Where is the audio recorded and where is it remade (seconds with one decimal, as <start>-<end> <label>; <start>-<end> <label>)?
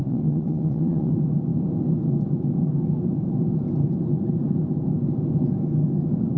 0.0-1.1 remade; 1.1-6.4 recorded